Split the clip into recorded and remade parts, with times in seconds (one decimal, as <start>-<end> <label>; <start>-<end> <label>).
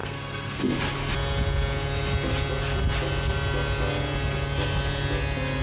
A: 0.0-0.6 remade; 0.6-5.6 recorded